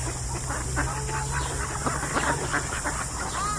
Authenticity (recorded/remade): recorded